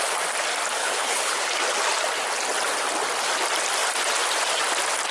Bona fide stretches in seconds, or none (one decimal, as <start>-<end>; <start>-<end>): 0.0-0.8; 1.4-5.1